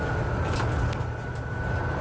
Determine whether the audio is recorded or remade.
recorded